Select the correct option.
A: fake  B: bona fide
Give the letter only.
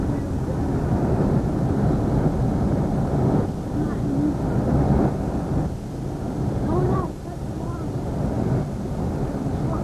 B